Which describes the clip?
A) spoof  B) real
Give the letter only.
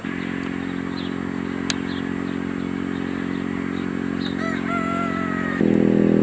B